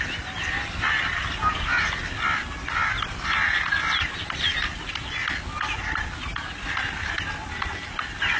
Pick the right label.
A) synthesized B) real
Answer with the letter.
B